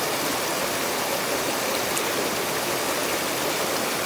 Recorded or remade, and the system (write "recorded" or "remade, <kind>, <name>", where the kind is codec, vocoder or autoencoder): recorded